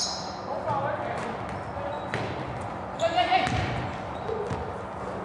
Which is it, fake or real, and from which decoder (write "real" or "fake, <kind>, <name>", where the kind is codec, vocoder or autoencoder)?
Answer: real